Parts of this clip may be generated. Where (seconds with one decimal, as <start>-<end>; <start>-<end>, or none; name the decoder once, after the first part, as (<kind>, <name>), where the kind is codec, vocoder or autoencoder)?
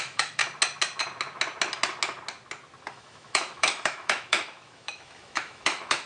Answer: 0.0-0.4 (autoencoder, DAC-VAE); 2.9-6.1